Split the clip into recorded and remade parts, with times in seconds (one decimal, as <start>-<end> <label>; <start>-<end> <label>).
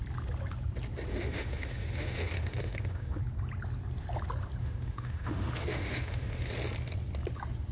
0.0-1.1 recorded; 1.1-3.2 remade; 3.2-4.6 recorded; 4.6-6.5 remade; 6.5-7.7 recorded